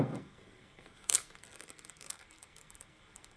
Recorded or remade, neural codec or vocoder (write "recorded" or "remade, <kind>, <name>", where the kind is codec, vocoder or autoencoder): remade, codec, SNAC